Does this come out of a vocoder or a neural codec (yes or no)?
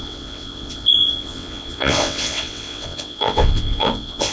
yes